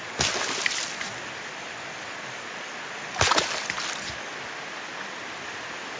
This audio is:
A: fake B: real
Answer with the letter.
B